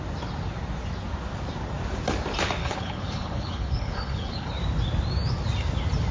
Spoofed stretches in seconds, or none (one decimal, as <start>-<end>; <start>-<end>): 2.6-4.5